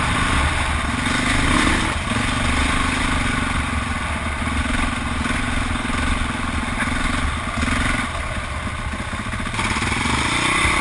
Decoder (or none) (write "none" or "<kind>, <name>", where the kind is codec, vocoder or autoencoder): none